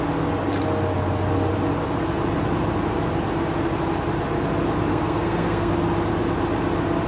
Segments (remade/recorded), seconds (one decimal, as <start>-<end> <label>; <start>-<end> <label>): 0.0-4.9 recorded; 4.9-5.7 remade; 5.7-7.1 recorded